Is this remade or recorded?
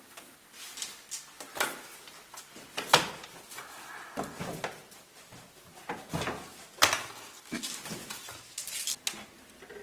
recorded